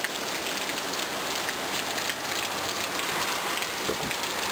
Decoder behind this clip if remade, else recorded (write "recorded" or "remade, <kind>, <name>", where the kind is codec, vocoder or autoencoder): recorded